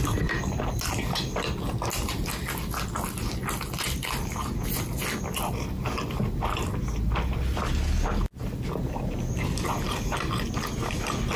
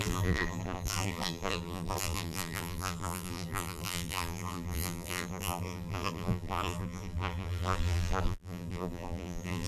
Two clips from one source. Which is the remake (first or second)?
second